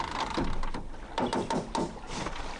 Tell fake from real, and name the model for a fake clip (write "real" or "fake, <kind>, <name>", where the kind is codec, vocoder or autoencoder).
real